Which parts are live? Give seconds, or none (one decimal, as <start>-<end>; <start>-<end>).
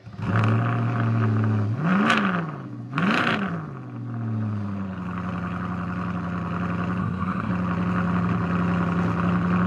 0.0-7.0; 7.5-9.7